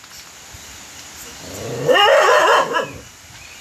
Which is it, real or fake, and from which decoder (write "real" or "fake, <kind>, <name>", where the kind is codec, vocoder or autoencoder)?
real